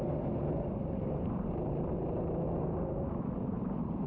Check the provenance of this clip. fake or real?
real